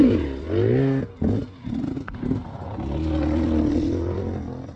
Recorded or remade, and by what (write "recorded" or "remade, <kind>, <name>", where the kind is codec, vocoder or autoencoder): recorded